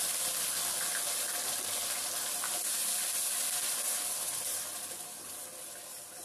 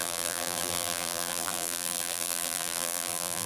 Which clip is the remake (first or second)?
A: second